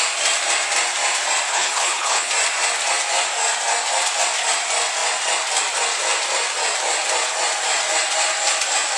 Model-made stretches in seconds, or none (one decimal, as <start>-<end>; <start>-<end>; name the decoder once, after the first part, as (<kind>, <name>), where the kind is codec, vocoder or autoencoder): 1.5-2.3 (codec, HILCodec)